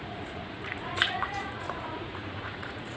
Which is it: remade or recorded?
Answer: remade